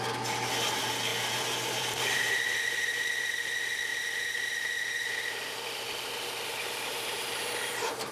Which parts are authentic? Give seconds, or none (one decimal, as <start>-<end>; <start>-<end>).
0.0-1.1; 3.5-3.9